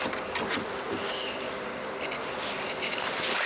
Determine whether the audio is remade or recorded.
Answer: recorded